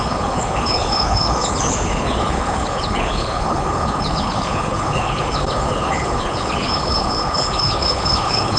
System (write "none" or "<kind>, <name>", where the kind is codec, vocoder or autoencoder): codec, HILCodec